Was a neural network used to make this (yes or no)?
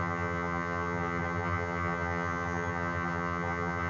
yes